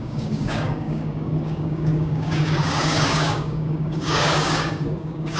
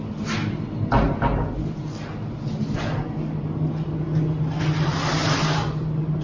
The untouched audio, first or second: second